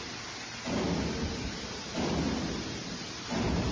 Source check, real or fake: real